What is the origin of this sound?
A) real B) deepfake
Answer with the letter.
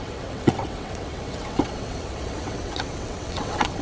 B